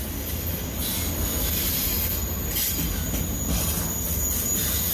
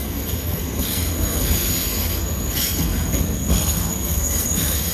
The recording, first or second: first